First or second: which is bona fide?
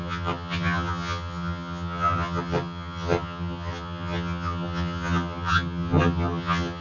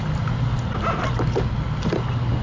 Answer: second